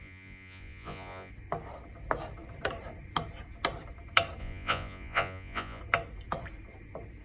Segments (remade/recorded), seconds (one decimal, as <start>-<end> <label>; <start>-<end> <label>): 0.0-1.3 remade; 1.3-4.4 recorded; 4.4-5.8 remade; 5.8-7.2 recorded